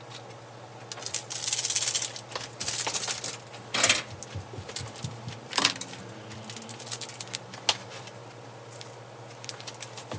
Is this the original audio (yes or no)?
yes